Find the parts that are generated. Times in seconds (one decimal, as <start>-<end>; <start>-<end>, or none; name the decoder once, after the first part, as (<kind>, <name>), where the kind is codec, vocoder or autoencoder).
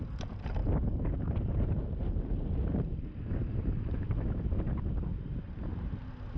0.6-4.1 (vocoder, BigVGAN v2); 5.1-5.9